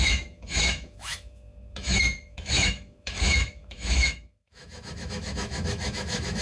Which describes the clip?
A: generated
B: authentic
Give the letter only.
A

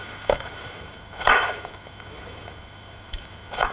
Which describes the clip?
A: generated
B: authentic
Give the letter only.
A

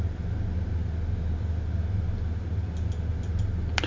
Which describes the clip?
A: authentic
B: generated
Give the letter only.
A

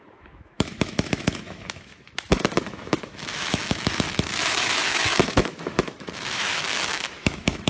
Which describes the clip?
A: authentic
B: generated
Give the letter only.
B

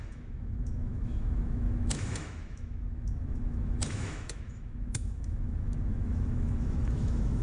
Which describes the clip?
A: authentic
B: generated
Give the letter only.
B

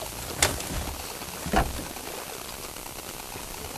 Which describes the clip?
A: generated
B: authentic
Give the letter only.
B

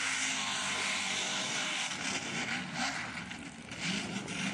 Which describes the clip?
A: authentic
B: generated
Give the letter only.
A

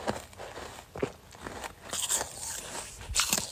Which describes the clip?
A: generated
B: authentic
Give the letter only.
B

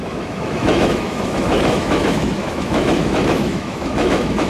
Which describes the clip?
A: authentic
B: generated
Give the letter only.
B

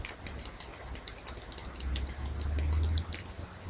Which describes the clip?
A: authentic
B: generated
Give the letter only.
A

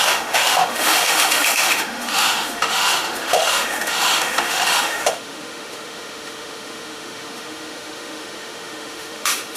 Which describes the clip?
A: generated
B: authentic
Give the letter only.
A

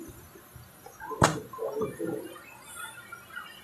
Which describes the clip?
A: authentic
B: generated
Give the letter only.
A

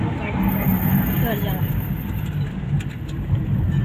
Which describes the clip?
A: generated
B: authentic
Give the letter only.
B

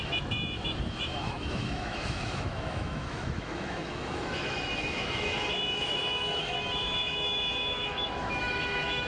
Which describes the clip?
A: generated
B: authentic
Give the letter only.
A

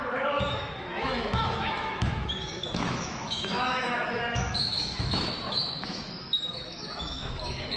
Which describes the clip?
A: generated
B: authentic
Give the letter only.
A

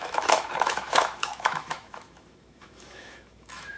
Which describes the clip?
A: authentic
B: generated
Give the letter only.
B